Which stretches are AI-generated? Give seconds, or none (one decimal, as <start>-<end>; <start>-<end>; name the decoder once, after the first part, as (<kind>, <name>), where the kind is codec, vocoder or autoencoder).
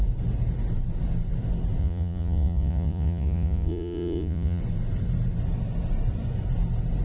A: 1.8-4.6 (vocoder, Vocos)